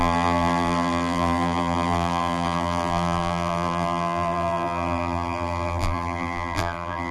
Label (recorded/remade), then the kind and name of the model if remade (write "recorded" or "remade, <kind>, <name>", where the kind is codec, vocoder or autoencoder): remade, vocoder, BigVGAN v2